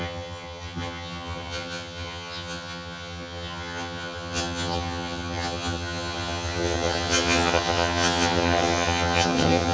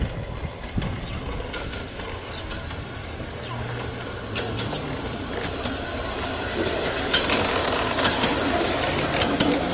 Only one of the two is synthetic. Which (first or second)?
first